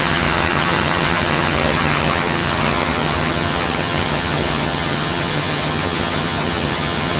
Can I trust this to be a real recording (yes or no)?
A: no